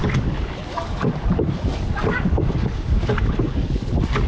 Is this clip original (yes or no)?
no